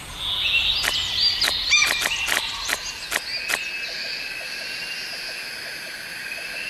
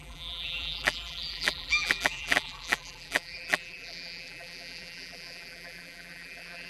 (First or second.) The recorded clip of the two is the first